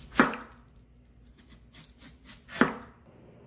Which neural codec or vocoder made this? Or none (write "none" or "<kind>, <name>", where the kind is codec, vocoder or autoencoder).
none